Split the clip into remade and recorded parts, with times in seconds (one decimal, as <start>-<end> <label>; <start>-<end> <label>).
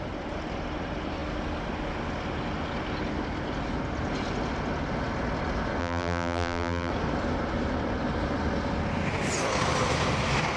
0.0-5.8 recorded; 5.8-6.9 remade; 6.9-10.6 recorded